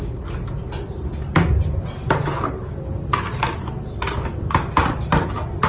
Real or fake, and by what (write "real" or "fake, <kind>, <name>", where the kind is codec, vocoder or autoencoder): real